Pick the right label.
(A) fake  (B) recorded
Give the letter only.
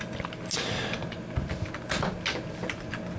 B